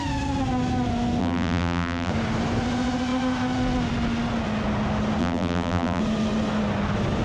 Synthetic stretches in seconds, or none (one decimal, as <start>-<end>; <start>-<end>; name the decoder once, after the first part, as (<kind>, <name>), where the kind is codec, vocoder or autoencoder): 1.2-2.1 (vocoder, BigVGAN v2); 5.2-6.0